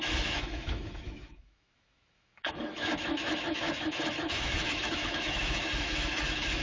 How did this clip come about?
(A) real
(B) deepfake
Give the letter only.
B